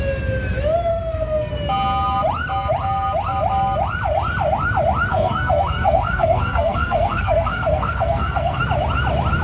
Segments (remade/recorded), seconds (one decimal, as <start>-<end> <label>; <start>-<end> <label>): 0.0-0.9 recorded; 0.9-1.5 remade; 1.5-5.1 recorded; 5.1-8.6 remade; 8.6-9.4 recorded